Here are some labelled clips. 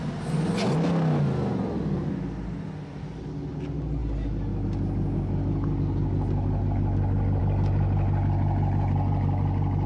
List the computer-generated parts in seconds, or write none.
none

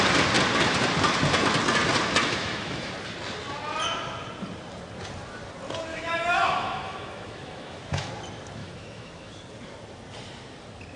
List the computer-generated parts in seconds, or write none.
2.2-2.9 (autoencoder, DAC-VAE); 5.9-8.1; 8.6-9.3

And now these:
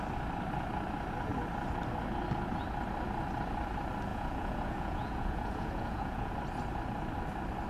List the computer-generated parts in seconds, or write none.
4.1-6.3 (vocoder, Vocos)

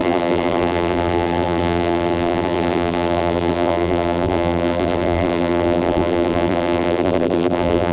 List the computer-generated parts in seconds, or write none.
0.0-7.9 (vocoder, BigVGAN v2)